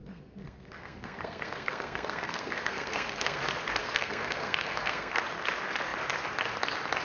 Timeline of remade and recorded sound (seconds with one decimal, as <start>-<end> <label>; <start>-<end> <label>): 0.0-3.4 remade; 3.4-3.8 recorded; 3.8-5.1 remade; 5.1-7.0 recorded